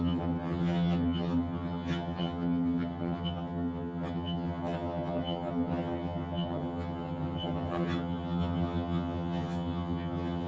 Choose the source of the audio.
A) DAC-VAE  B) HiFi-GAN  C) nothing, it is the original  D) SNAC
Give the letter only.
B